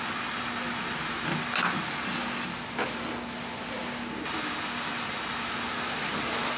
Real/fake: real